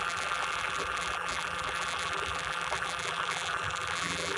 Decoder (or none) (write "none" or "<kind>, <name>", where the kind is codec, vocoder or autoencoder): vocoder, BigVGAN v2